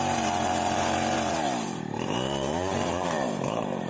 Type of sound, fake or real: fake